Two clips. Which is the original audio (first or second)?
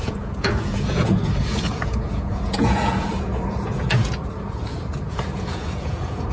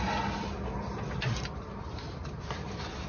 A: second